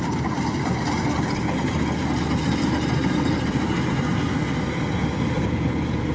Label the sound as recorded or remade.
recorded